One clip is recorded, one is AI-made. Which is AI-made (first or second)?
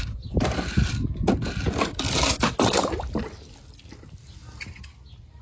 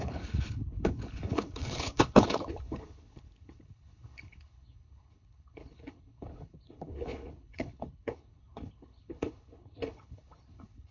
second